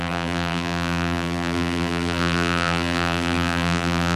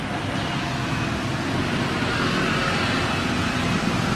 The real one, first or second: second